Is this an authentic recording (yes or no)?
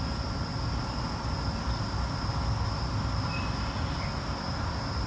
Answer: yes